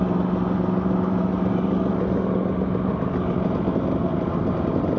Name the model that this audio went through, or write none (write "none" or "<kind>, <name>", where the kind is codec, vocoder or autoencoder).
none